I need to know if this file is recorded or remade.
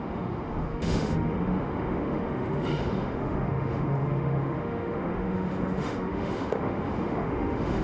remade